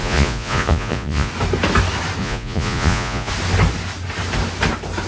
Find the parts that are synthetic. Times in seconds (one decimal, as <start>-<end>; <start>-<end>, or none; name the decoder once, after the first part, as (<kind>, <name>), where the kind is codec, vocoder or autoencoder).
0.0-1.3 (vocoder, Vocos); 2.2-3.3